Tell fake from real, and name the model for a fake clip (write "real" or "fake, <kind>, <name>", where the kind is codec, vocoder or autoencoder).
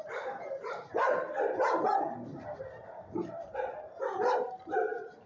fake, vocoder, BigVGAN v2